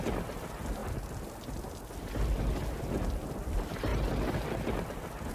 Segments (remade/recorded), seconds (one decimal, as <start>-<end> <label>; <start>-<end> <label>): 0.0-5.3 recorded